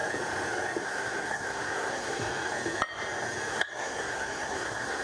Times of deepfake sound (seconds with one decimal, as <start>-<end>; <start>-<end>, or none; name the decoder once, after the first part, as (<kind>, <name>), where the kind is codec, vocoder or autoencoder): 0.8-2.3 (codec, SNAC); 3.5-5.0